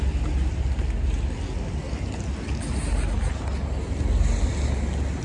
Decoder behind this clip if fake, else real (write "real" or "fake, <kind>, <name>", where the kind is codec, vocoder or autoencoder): real